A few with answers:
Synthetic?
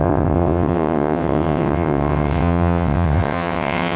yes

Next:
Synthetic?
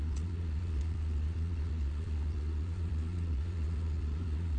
yes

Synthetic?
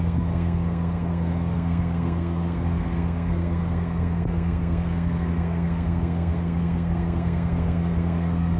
yes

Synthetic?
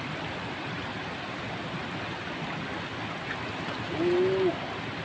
no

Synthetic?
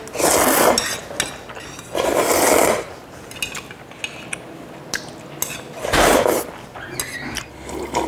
no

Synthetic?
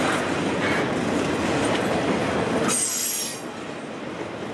no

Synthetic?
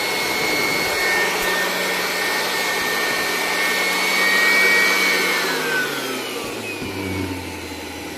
no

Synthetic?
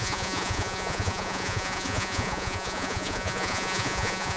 yes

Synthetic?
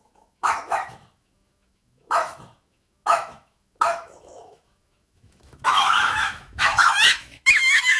yes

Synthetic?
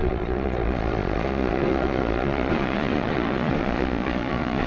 yes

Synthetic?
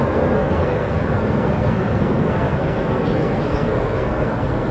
yes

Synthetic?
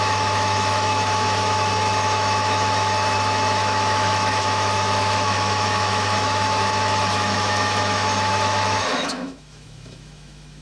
yes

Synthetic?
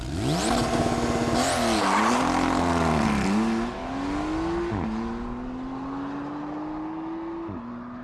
no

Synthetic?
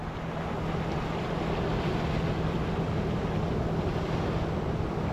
no